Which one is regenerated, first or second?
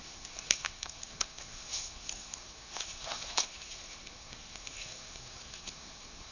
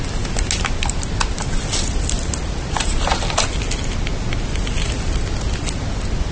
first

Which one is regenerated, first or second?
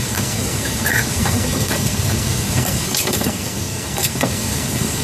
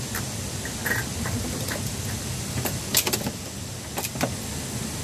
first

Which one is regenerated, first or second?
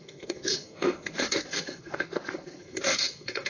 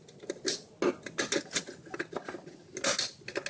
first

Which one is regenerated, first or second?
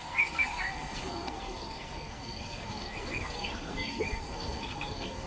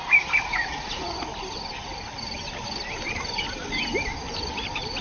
first